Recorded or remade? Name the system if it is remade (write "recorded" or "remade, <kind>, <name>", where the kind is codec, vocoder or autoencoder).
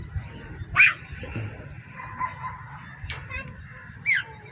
recorded